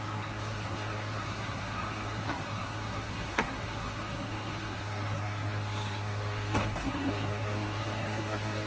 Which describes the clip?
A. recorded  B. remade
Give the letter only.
B